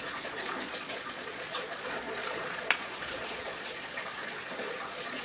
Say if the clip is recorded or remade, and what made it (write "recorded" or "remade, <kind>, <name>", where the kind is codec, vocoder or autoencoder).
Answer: remade, vocoder, Vocos